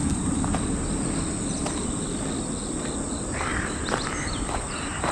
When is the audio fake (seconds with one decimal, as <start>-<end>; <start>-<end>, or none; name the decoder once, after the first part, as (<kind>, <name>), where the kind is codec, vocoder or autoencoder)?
0.0-0.9 (vocoder, BigVGAN v2); 3.5-5.1